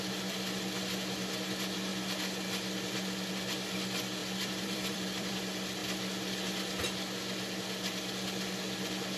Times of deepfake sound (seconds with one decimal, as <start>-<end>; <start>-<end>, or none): 4.2-5.3